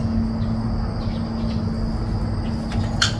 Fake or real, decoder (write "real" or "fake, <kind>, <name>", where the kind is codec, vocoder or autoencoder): real